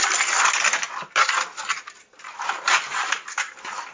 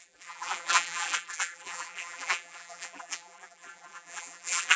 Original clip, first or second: first